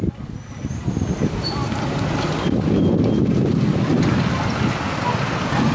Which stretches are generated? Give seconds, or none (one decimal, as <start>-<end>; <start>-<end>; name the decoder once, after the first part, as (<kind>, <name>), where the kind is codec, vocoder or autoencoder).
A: none